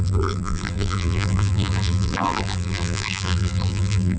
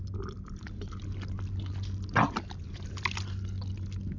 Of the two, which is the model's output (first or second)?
first